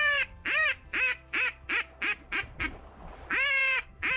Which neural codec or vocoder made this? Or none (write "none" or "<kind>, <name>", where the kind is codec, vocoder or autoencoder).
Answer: vocoder, BigVGAN v2